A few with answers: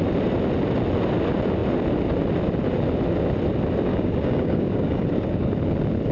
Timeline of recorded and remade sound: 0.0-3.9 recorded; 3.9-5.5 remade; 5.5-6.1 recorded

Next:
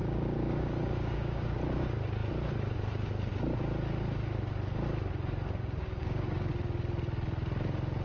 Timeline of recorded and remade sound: 0.0-1.6 remade; 1.6-5.6 recorded; 5.6-6.5 remade; 6.5-8.0 recorded